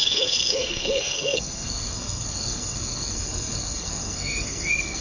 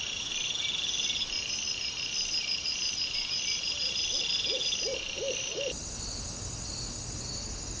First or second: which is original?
second